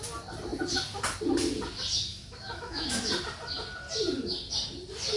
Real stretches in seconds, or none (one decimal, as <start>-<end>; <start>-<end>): 0.0-2.1; 3.1-5.2